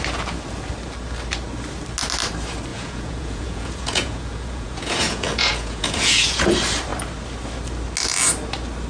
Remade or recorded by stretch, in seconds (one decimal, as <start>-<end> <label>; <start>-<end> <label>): 0.0-2.7 recorded; 2.7-6.5 remade; 6.5-8.9 recorded